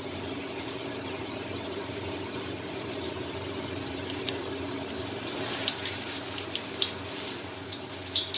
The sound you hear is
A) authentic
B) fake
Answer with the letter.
B